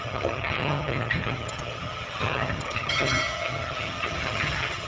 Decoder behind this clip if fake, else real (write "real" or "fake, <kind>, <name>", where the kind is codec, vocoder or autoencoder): fake, vocoder, HiFi-GAN